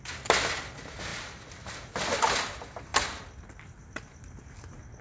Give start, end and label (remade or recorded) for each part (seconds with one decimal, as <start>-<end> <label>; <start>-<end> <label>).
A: 0.0-5.0 recorded